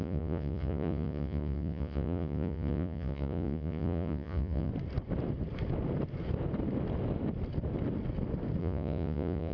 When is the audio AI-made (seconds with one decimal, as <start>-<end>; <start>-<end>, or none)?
0.0-4.7; 8.6-9.5